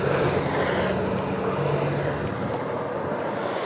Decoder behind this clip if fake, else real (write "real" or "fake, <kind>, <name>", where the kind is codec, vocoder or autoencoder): real